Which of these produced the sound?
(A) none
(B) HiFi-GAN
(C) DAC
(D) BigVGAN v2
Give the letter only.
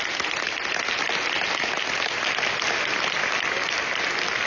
A